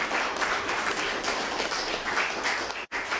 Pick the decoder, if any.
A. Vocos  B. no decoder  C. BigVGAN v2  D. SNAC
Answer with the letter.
B